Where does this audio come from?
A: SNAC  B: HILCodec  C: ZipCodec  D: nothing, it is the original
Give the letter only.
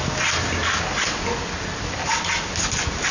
D